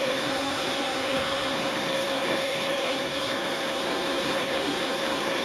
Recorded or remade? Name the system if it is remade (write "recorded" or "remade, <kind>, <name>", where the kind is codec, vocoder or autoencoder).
remade, codec, SNAC